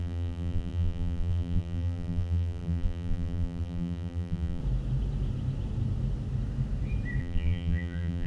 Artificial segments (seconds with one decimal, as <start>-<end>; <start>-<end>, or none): 0.0-4.6; 7.2-8.3